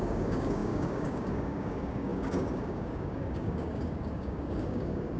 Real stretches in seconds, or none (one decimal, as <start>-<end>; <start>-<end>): none